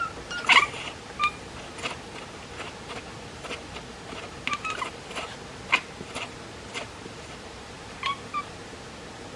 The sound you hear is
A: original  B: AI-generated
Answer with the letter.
A